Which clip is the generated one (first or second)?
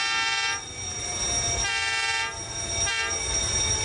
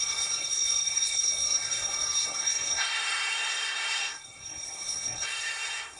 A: second